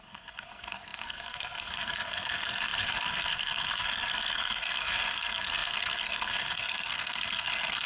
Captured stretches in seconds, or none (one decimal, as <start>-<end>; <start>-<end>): none